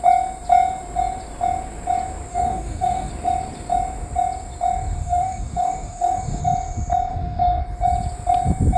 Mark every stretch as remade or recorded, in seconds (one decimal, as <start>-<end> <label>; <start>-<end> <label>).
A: 0.0-2.3 recorded; 2.3-3.1 remade; 3.1-5.0 recorded; 5.0-6.4 remade; 6.4-7.1 recorded; 7.1-7.6 remade; 7.6-8.8 recorded